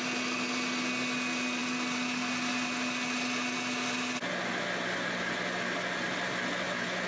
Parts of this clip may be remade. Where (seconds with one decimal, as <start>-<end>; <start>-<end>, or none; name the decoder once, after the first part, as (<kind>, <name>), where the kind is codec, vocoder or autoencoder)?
none

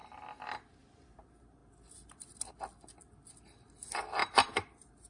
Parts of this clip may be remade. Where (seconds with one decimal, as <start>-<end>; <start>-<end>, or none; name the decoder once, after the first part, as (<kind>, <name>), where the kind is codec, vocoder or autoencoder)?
4.2-5.1 (vocoder, BigVGAN v2)

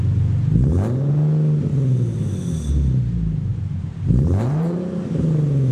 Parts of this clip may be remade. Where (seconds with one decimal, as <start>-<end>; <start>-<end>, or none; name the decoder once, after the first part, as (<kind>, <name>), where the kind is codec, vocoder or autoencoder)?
3.5-4.8 (vocoder, BigVGAN v2)

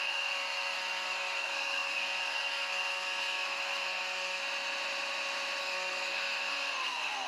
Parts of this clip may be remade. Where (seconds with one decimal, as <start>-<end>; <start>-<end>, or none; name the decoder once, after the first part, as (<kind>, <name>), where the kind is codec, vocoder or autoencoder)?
0.0-4.4 (codec, SNAC); 5.6-7.3

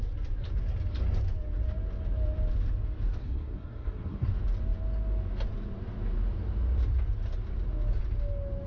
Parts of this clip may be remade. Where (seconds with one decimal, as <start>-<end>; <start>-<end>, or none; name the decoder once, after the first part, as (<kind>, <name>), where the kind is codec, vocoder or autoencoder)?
3.2-4.3 (codec, SNAC)

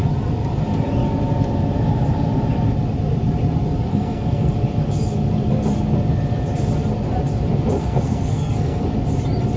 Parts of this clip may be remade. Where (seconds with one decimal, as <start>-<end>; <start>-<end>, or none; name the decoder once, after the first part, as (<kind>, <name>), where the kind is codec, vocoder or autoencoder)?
3.9-4.5 (codec, SNAC); 7.8-8.8

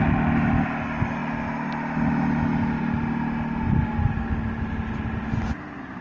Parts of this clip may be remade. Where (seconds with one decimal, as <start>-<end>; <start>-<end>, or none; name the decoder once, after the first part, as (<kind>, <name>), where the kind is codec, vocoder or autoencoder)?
none

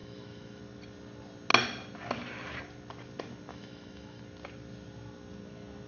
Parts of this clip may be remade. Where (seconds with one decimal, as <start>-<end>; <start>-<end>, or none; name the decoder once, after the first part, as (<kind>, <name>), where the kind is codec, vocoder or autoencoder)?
0.0-0.6 (autoencoder, DAC-VAE); 3.5-4.2